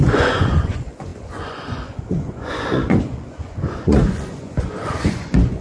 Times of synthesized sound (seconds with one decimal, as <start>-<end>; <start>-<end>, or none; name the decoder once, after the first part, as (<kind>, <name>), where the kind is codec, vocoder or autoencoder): 0.0-5.6 (vocoder, Vocos)